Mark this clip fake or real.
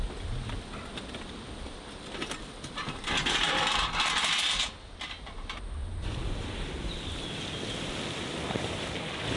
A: real